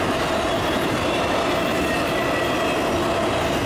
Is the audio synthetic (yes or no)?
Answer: no